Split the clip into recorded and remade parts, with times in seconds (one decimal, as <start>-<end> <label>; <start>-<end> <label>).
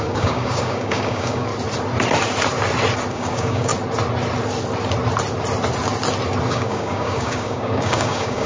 0.0-1.5 remade; 1.5-3.1 recorded; 3.1-3.7 remade; 3.7-6.5 recorded; 6.5-8.5 remade